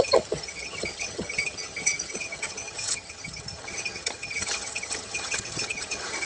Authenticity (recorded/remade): remade